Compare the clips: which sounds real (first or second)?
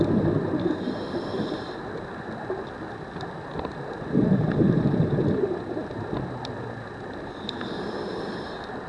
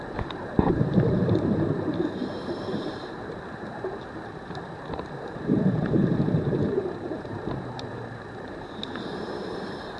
first